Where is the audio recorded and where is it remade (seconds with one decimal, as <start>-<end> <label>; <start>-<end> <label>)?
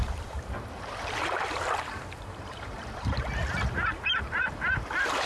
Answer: 0.0-5.3 remade